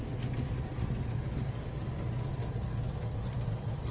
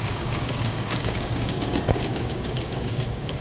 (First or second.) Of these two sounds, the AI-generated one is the second